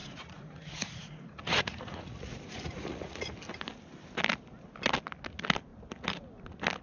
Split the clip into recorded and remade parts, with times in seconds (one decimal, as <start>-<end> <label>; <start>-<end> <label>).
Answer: 0.0-3.3 remade; 3.3-6.8 recorded